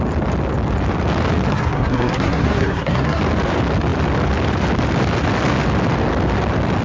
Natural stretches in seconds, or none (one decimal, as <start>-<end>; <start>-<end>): 0.0-1.5; 3.2-6.8

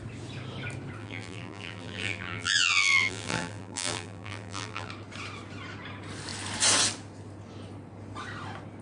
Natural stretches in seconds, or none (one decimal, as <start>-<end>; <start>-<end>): 0.0-1.0; 4.9-8.8